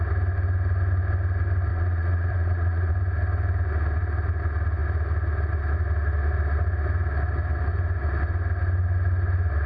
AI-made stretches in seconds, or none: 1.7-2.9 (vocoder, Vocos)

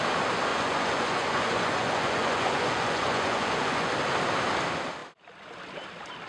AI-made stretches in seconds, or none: 0.5-3.9 (vocoder, Vocos)

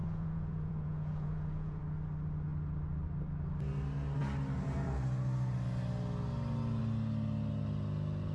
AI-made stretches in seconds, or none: 0.0-1.8 (vocoder, Vocos)

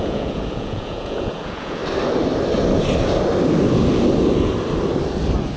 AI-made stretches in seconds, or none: 0.0-1.8 (vocoder, Vocos)

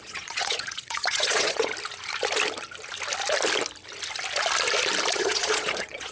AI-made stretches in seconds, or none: 0.0-1.7 (vocoder, Vocos); 5.1-6.1

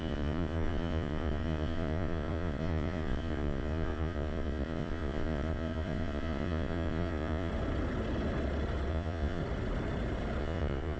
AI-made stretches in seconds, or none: 0.0-7.5 (vocoder, Vocos); 8.9-9.4; 10.4-11.0

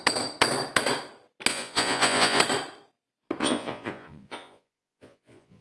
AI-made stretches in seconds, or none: 1.5-2.4 (vocoder, Vocos); 3.4-5.6